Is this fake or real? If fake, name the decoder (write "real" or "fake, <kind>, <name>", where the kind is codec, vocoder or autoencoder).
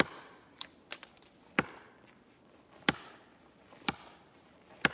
real